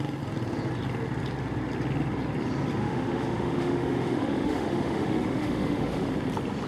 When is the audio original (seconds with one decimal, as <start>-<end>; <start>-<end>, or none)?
0.0-2.8; 6.1-6.7